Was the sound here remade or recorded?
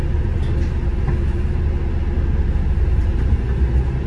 recorded